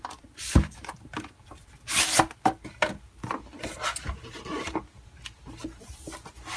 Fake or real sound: real